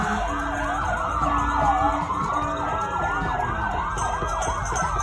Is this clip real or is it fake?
real